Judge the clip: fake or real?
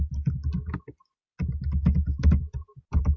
real